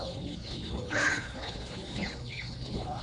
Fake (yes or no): yes